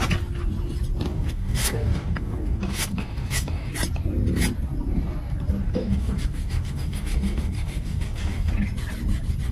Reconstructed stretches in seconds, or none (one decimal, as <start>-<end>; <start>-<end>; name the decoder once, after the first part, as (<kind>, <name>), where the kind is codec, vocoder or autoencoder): 1.1-3.7 (codec, DAC); 5.6-8.5

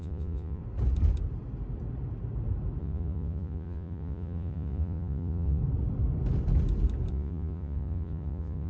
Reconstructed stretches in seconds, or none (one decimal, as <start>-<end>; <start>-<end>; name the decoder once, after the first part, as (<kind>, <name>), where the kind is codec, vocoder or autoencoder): 0.0-0.6 (vocoder, Vocos); 2.8-5.6; 7.1-8.7

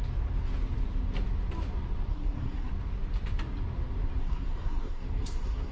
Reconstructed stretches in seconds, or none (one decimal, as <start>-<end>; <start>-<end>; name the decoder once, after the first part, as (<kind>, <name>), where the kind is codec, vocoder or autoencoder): 2.1-2.7 (codec, SNAC); 4.2-5.7

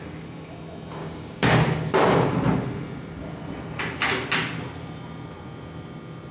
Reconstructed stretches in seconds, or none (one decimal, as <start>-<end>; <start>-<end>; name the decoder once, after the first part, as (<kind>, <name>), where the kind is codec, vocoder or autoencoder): 1.0-2.3 (codec, DAC)

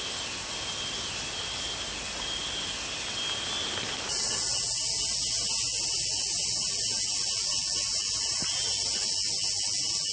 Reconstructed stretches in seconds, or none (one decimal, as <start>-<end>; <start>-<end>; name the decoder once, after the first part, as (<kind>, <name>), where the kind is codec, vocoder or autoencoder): none

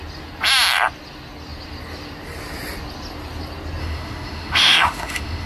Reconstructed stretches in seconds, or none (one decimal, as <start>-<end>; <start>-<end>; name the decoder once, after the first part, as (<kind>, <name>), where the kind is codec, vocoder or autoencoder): 3.8-5.5 (autoencoder, DAC-VAE)

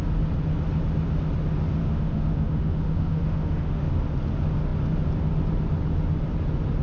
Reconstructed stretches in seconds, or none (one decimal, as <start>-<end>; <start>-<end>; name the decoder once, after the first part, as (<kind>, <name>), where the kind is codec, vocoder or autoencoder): 1.8-3.9 (autoencoder, DAC-VAE)

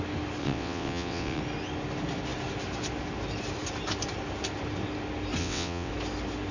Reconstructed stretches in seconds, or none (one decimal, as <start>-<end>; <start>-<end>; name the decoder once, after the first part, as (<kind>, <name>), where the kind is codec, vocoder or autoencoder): 0.4-1.4 (vocoder, WaveNeXt); 5.4-5.9